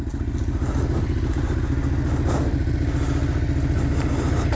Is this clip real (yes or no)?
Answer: yes